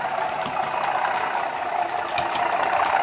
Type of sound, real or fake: real